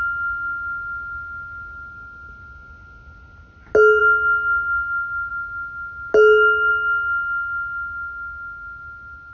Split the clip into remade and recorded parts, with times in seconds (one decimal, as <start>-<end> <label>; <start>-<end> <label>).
0.0-9.3 recorded